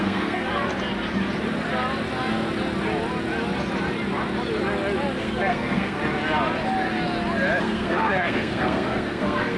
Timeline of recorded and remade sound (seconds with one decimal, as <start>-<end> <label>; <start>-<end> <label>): 0.0-0.5 remade; 0.5-5.2 recorded; 5.2-6.0 remade; 6.0-7.6 recorded; 7.6-9.6 remade